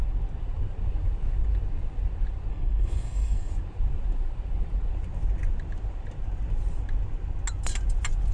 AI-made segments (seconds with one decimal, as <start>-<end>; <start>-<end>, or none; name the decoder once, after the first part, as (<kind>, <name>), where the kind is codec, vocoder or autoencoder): 2.5-3.5 (codec, SNAC)